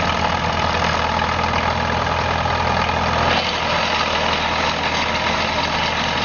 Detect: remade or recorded recorded